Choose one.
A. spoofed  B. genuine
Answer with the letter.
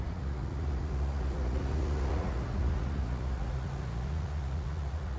A